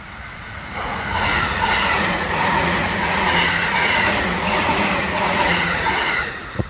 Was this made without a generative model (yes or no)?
no